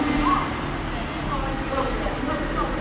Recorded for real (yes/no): yes